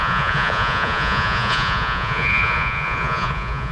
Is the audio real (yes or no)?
no